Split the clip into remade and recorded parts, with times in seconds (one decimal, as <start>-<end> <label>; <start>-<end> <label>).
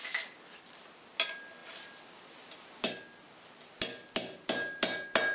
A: 0.0-5.3 recorded